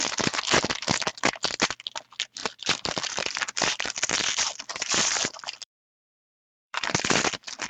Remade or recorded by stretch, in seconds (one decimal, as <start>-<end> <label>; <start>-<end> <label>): 0.0-2.4 recorded; 2.4-7.0 remade; 7.0-7.7 recorded